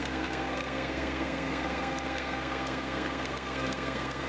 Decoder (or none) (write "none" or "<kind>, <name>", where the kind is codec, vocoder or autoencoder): codec, SNAC